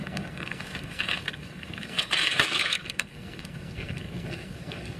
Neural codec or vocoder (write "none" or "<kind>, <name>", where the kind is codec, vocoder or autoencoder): codec, SNAC